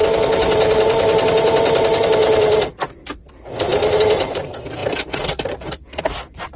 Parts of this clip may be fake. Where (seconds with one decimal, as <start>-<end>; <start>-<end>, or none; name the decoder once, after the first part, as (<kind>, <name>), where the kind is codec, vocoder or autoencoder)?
4.0-4.8 (vocoder, BigVGAN v2); 5.4-6.6